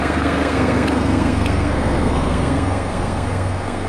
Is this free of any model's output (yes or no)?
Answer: no